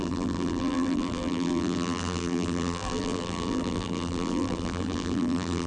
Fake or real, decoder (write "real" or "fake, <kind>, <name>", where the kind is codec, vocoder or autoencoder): fake, vocoder, BigVGAN v2